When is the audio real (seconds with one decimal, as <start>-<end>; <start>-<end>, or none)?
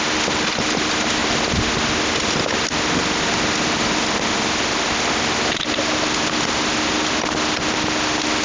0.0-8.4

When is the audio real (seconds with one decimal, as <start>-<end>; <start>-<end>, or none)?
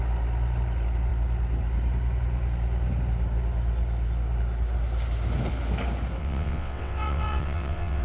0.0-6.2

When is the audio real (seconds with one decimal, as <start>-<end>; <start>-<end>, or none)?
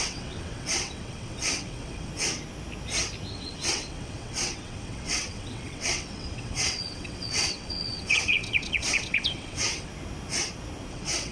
2.1-3.3; 9.9-10.9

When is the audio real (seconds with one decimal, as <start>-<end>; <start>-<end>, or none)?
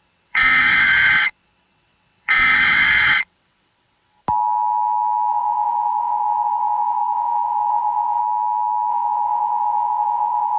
4.2-5.3; 8.2-8.9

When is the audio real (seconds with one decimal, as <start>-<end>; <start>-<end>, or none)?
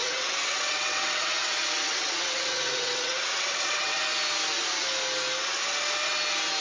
4.0-6.6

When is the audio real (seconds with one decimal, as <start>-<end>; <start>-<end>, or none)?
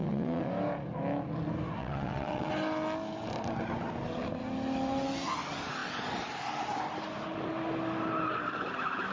0.5-1.8; 2.5-9.1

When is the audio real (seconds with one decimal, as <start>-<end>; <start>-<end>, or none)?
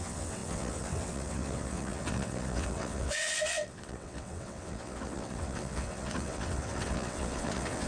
none